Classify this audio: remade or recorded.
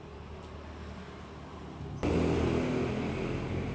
recorded